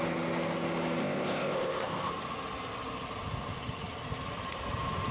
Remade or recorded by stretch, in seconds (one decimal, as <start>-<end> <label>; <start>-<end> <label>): 0.0-1.0 recorded; 1.0-2.1 remade; 2.1-5.1 recorded